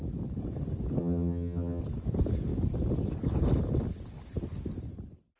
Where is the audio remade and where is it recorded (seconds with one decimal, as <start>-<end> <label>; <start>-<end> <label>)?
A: 0.0-1.0 recorded; 1.0-1.8 remade; 1.8-5.4 recorded